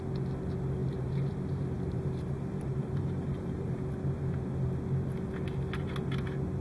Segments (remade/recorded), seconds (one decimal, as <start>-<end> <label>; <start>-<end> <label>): 0.0-0.8 recorded; 0.8-4.8 remade; 4.8-6.6 recorded